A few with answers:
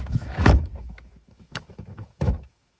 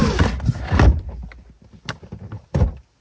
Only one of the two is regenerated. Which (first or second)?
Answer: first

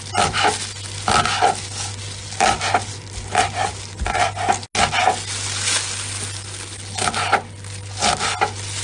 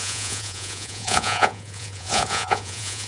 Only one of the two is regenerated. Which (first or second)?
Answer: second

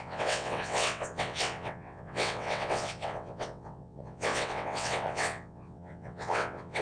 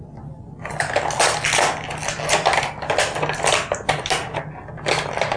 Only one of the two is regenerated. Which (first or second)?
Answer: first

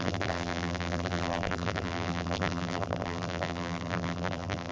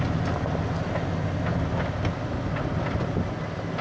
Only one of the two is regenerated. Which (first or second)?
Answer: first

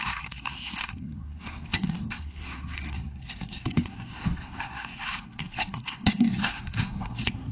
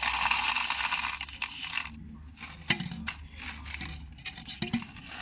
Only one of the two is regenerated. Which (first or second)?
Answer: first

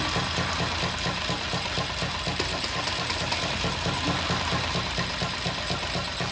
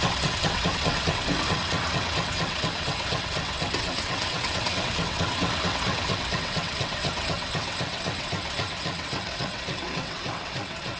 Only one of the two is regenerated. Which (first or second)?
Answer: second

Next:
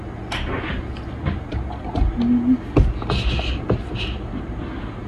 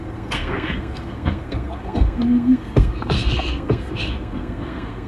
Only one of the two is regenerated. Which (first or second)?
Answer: second